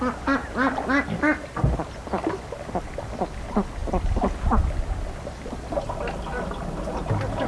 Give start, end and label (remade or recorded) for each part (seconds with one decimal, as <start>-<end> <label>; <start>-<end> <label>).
0.0-7.5 recorded